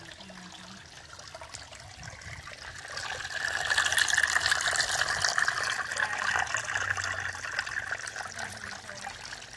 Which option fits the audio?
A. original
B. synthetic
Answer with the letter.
A